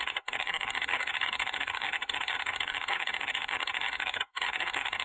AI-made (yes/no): yes